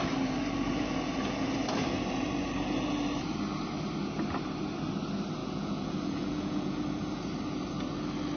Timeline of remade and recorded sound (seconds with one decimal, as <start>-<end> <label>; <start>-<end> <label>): 0.0-5.4 recorded; 5.4-6.8 remade; 6.8-8.4 recorded